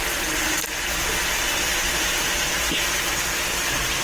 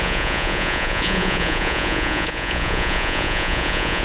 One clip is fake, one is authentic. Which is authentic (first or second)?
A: first